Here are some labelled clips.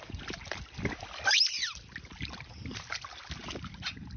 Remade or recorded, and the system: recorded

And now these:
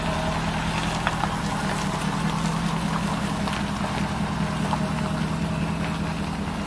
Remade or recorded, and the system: recorded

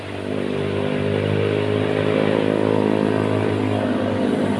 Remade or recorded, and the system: recorded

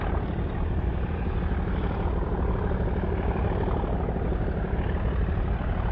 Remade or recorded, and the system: recorded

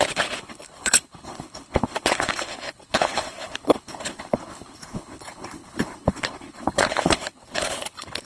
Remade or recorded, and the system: remade, codec, HILCodec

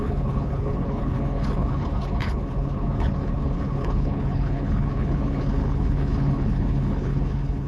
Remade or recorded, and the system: remade, codec, HILCodec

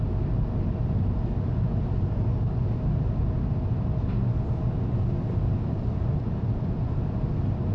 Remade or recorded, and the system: recorded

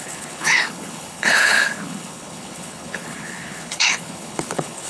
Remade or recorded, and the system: remade, codec, HILCodec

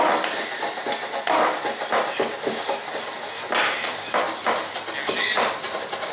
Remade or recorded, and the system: recorded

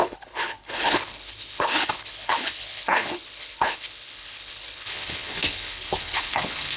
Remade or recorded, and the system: remade, codec, HILCodec